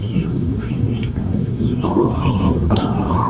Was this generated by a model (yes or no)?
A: yes